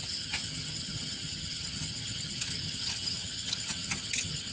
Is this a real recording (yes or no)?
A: no